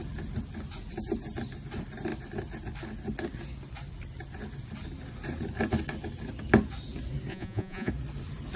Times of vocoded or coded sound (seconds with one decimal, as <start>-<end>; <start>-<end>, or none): 7.3-7.9